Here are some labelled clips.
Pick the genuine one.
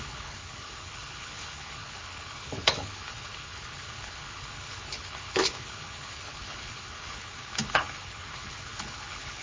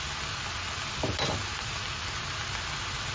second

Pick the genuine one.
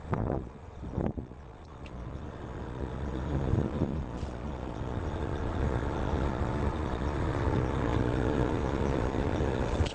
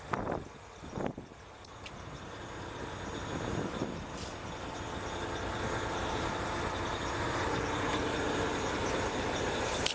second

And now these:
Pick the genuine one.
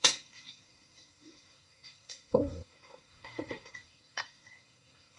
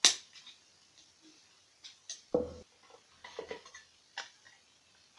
second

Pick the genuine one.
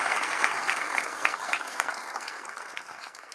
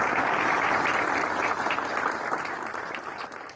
second